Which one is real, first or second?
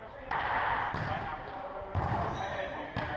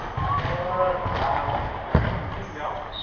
second